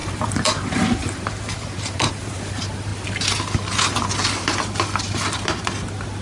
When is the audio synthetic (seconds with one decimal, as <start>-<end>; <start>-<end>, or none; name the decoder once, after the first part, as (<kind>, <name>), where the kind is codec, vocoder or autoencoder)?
0.0-2.9 (vocoder, BigVGAN v2)